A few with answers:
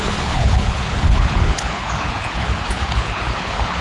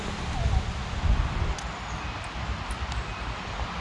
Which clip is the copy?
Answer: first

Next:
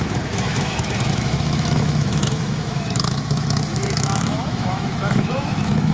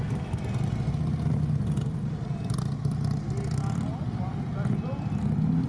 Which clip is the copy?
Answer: first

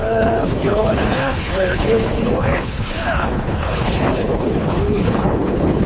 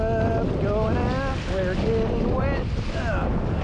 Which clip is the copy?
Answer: first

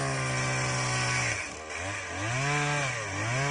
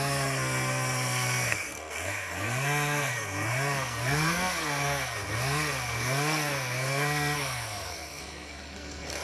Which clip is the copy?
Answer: second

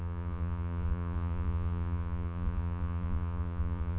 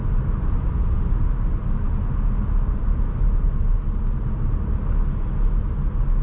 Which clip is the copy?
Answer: first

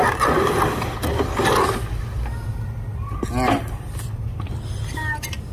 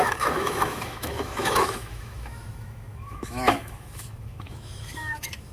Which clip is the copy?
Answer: second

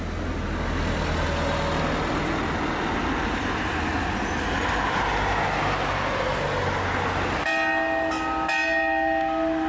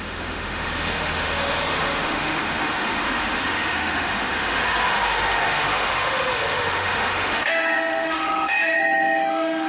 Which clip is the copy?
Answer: second